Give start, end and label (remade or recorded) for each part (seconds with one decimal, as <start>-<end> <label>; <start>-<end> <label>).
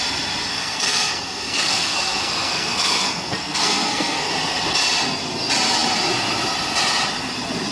0.0-0.5 recorded; 0.5-4.3 remade; 4.3-7.7 recorded